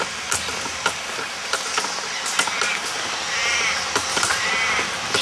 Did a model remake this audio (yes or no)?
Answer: no